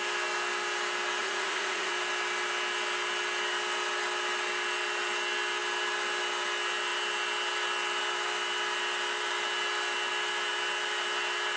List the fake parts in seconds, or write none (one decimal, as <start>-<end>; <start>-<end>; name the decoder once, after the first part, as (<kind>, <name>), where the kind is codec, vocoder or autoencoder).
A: 1.2-1.9 (vocoder, Vocos)